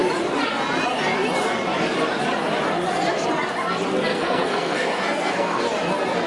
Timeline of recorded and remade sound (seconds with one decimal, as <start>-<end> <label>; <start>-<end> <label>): 0.0-4.1 recorded; 4.1-5.6 remade; 5.6-6.3 recorded